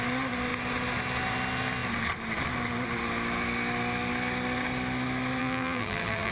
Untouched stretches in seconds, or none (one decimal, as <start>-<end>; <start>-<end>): 0.0-5.4